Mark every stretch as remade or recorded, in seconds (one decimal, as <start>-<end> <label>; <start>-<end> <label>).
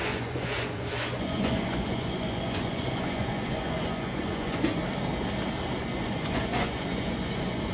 0.0-4.8 remade; 4.8-5.8 recorded; 5.8-7.7 remade